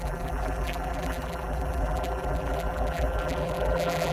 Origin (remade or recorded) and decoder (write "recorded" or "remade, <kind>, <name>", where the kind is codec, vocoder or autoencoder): remade, vocoder, BigVGAN v2